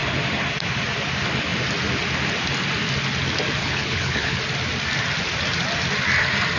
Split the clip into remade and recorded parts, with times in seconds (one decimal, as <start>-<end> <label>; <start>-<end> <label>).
0.0-3.6 recorded; 3.6-4.4 remade; 4.4-6.6 recorded